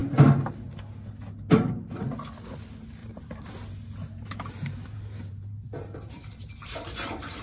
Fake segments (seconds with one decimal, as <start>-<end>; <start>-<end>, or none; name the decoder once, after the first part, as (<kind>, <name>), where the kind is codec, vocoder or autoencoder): 3.0-7.4 (vocoder, BigVGAN v2)